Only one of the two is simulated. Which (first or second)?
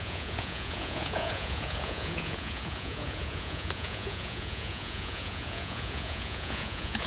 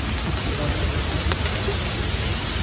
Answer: first